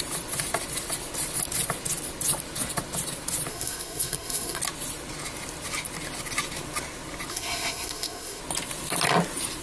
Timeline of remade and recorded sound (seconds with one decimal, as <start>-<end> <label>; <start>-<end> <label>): 0.0-3.5 recorded; 3.5-4.6 remade; 4.6-7.3 recorded; 7.3-8.4 remade; 8.4-9.6 recorded